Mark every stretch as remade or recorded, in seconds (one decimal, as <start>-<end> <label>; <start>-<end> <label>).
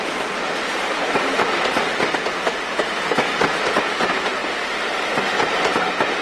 0.0-6.2 recorded